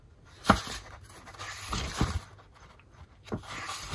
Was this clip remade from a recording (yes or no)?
no